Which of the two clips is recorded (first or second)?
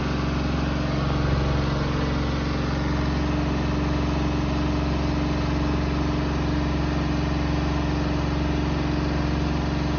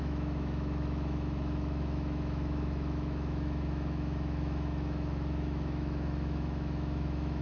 first